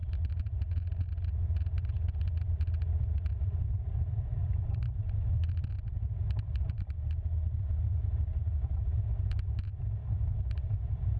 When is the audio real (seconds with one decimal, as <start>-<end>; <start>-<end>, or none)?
0.0-11.2